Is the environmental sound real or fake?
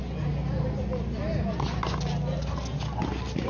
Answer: real